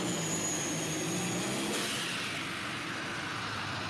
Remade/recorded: recorded